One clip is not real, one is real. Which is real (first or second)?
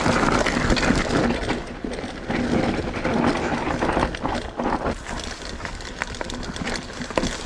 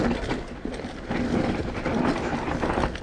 first